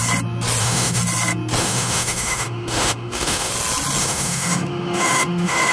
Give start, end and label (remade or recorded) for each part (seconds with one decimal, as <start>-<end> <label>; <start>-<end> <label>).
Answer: 0.0-0.6 recorded; 0.6-1.0 remade; 1.0-1.6 recorded; 1.6-3.5 remade; 3.5-4.0 recorded; 4.0-5.7 remade